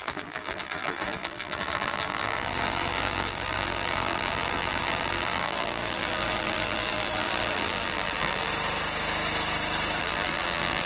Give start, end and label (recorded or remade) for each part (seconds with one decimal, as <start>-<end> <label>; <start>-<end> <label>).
0.0-8.5 remade; 8.5-10.0 recorded; 10.0-10.9 remade